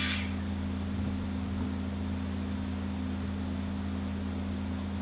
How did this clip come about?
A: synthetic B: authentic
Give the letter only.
B